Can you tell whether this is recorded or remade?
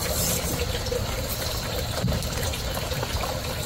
recorded